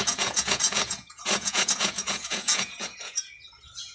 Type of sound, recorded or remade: remade